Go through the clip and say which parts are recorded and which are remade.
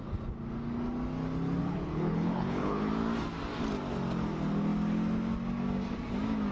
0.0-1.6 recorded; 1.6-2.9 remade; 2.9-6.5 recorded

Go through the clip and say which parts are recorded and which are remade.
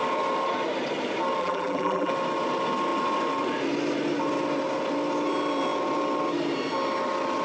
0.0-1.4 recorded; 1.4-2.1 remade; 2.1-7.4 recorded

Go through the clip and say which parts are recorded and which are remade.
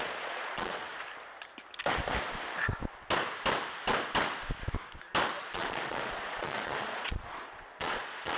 0.0-0.9 remade; 0.9-5.4 recorded; 5.4-8.4 remade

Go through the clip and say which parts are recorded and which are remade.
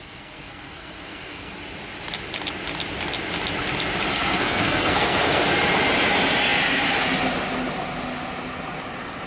0.0-1.5 remade; 1.5-4.1 recorded; 4.1-5.4 remade; 5.4-9.3 recorded